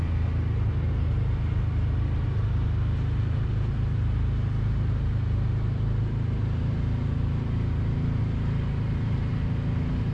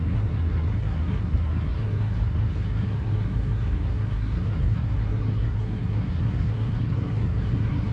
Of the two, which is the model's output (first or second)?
second